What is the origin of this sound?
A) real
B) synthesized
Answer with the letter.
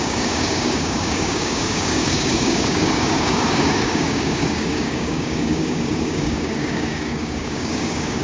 B